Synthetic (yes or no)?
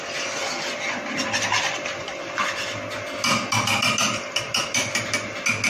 no